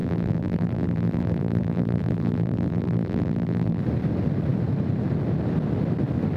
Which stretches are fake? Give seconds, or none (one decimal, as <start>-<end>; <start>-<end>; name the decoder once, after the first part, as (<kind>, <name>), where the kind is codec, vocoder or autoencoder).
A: 0.0-3.8 (vocoder, BigVGAN v2)